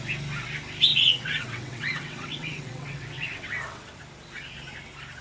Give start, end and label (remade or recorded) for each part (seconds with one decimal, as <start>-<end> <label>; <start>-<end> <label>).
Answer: 0.0-0.9 recorded; 0.9-4.0 remade; 4.0-5.2 recorded